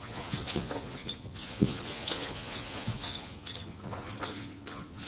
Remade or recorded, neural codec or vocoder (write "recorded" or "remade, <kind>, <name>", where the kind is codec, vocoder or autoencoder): remade, vocoder, Vocos